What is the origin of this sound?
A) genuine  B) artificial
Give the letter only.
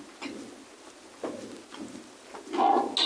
A